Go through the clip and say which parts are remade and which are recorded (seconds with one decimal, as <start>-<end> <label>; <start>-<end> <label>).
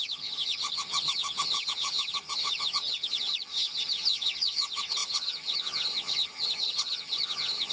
0.0-7.7 remade